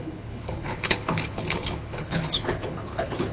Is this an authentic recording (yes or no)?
no